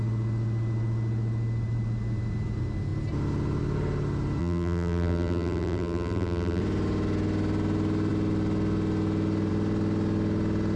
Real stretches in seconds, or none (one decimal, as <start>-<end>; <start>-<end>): 0.0-4.4; 6.6-10.8